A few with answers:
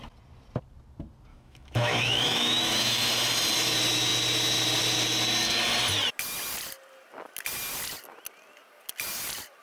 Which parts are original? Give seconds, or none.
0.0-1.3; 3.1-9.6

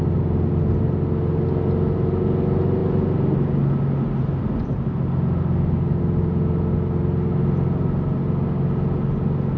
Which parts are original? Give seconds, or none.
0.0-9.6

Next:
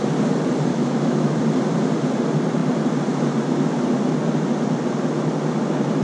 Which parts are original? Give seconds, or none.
0.0-0.7; 1.4-6.0

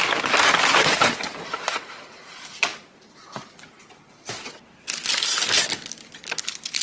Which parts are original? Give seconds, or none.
0.0-6.8

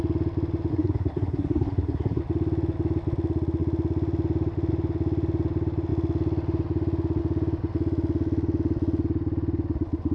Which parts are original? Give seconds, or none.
0.0-0.7; 2.2-10.1

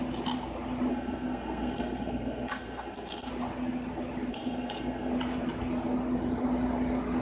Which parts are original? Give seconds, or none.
0.0-0.9; 3.3-4.3; 5.1-7.2